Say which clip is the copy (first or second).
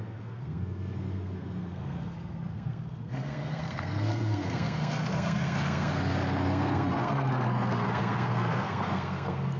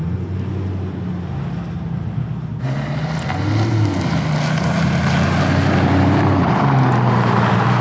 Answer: first